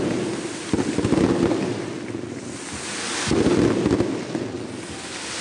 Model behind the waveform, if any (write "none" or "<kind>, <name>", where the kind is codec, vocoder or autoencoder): none